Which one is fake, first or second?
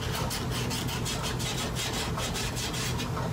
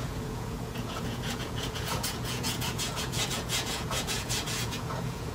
second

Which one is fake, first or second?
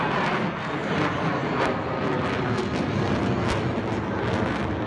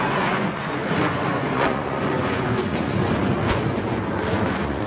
second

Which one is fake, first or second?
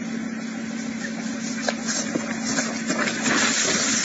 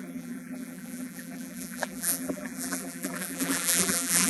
second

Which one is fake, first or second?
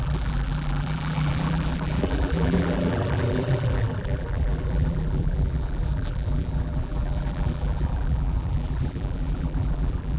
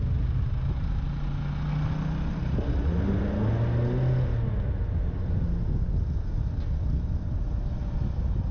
first